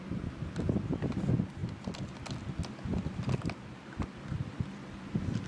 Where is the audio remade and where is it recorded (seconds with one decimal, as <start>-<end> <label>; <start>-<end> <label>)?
0.0-1.6 recorded; 1.6-2.3 remade; 2.3-2.9 recorded; 2.9-5.1 remade; 5.1-5.5 recorded